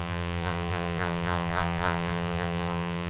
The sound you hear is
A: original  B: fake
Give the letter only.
B